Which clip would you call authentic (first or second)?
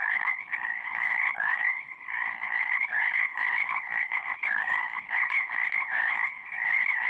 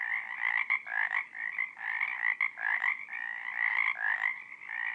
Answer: second